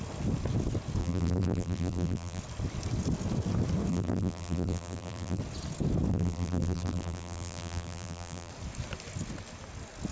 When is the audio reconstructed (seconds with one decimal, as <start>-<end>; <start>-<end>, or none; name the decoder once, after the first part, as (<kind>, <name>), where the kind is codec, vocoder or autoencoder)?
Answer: 1.0-2.4 (vocoder, BigVGAN v2); 3.9-5.4; 6.1-8.5